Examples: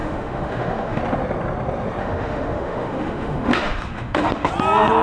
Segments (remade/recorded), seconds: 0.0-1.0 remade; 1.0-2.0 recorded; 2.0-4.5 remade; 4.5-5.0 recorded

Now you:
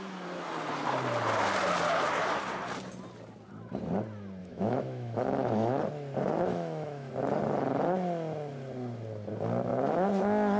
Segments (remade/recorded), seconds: 0.0-4.4 recorded; 4.4-5.8 remade; 5.8-6.5 recorded; 6.5-7.1 remade; 7.1-10.6 recorded

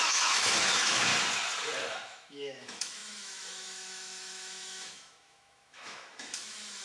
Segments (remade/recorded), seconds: 0.0-1.1 remade; 1.1-1.9 recorded; 1.9-6.8 remade

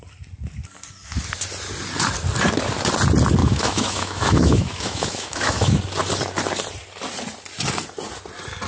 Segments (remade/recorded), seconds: 0.0-3.4 recorded; 3.4-5.8 remade; 5.8-8.7 recorded

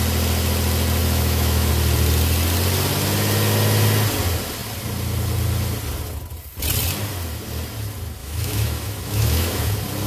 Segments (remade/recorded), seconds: 0.0-1.0 recorded; 1.0-1.7 remade; 1.7-8.2 recorded; 8.2-9.7 remade; 9.7-10.1 recorded

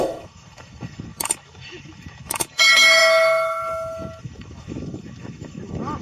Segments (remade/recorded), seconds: 0.0-6.0 remade

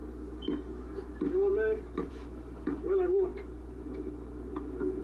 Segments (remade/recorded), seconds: 0.0-2.1 recorded; 2.1-5.0 remade